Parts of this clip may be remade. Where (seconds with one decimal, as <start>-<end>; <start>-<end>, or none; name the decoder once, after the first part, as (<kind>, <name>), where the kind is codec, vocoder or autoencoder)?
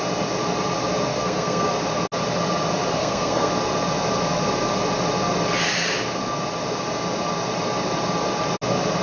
1.1-1.7 (codec, SNAC); 2.9-3.5